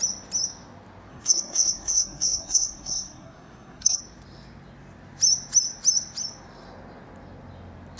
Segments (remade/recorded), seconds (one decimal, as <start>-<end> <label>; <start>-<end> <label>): 0.0-1.1 recorded; 1.1-4.0 remade; 4.0-8.0 recorded